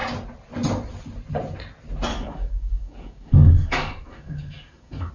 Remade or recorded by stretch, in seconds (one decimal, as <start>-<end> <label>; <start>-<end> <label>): 0.0-2.1 recorded; 2.1-5.1 remade